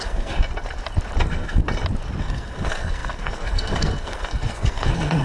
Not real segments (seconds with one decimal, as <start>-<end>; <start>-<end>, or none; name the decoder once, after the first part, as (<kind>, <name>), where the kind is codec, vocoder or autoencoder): 0.0-0.4 (codec, SNAC); 1.2-1.6; 2.2-5.2